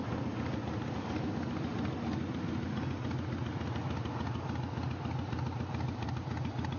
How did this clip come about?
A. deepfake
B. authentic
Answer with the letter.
B